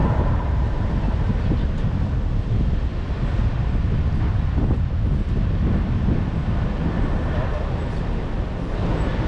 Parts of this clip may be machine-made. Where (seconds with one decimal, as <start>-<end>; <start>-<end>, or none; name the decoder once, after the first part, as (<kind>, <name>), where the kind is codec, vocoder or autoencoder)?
0.0-2.0 (vocoder, BigVGAN v2)